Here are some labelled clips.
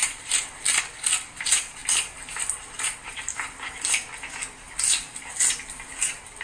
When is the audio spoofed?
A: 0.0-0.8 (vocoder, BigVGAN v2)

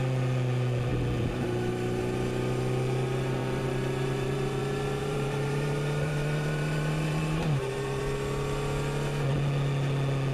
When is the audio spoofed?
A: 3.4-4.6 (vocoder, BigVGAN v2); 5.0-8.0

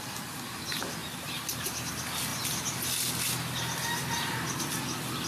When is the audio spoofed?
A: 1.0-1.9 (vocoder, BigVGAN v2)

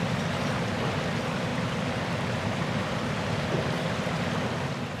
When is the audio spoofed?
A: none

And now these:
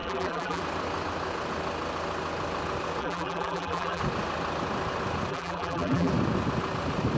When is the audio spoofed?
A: 0.0-0.6 (vocoder, BigVGAN v2); 3.0-4.0; 5.3-6.1

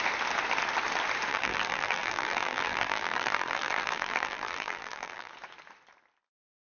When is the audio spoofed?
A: 1.3-5.3 (vocoder, BigVGAN v2)

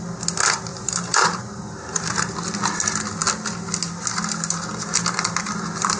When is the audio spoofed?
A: 0.7-2.3 (vocoder, BigVGAN v2)